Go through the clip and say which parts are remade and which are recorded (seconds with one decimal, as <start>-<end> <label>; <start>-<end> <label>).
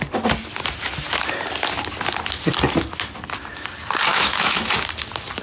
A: 0.0-4.1 recorded; 4.1-4.7 remade; 4.7-5.4 recorded